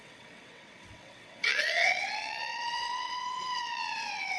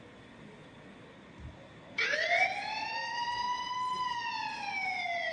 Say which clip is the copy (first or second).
first